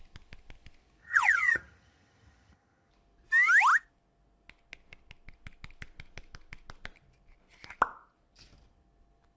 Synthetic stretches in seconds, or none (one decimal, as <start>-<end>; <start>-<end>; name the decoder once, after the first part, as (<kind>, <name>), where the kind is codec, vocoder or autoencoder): 1.0-2.9 (vocoder, HiFi-GAN)